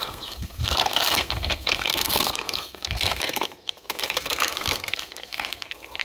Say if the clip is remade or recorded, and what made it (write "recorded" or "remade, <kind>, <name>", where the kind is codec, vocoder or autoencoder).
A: remade, codec, SNAC